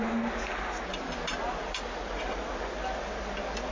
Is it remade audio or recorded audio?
recorded